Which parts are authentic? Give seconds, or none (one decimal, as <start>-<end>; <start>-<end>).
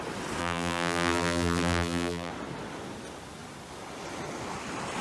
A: 0.0-0.4; 2.3-5.0